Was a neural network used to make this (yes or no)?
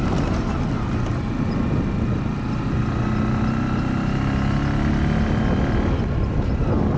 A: no